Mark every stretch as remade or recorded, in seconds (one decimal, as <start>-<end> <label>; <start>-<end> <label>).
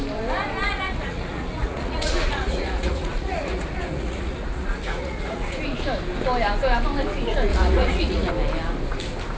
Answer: 0.0-0.6 recorded; 0.6-5.6 remade; 5.6-7.5 recorded; 7.5-8.3 remade; 8.3-9.4 recorded